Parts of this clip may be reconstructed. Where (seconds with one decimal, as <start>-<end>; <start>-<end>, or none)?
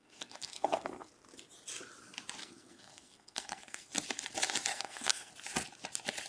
0.0-1.1; 2.4-3.9; 4.7-5.3